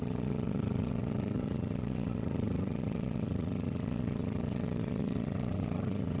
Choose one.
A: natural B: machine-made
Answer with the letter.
B